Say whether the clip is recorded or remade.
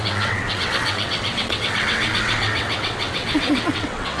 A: remade